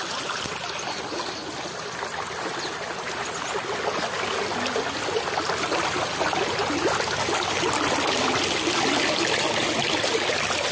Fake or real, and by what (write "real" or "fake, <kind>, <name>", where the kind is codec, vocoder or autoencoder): real